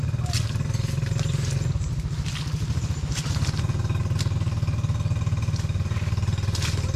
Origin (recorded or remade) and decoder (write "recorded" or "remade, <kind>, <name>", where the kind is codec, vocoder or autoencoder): recorded